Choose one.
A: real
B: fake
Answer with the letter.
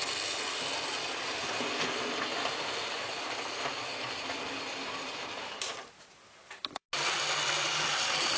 A